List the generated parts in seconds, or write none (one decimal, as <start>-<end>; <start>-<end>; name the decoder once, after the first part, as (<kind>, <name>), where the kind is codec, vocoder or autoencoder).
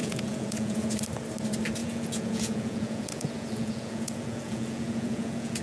0.0-1.0 (vocoder, Vocos); 1.8-5.6